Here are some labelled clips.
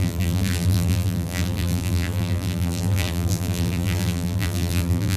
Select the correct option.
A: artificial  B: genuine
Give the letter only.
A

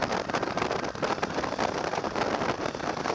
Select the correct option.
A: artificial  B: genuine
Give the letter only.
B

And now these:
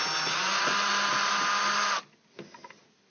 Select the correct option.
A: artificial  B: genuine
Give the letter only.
B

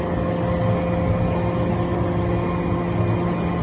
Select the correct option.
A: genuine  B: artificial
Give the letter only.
A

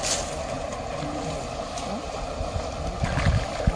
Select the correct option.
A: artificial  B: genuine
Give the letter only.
B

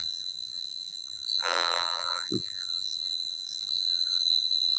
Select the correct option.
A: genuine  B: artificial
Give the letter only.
B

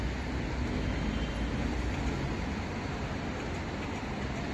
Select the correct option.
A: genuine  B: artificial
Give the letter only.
A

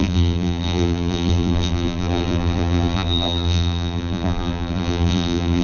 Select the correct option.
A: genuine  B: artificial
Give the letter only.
B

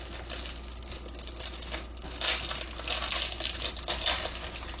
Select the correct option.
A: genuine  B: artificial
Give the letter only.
A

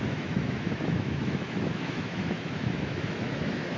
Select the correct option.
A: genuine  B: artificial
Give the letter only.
B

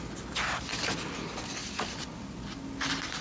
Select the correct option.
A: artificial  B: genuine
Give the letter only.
B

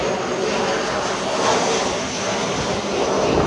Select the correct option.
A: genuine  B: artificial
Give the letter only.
A